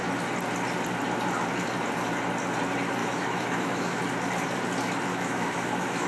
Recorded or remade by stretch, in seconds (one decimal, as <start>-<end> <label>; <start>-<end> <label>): 0.0-3.0 recorded; 3.0-4.0 remade; 4.0-5.1 recorded; 5.1-6.1 remade